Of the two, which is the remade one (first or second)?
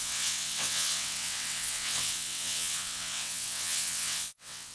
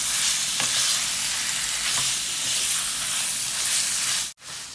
first